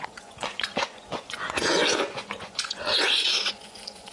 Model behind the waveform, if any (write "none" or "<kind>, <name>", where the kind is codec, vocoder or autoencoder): vocoder, Vocos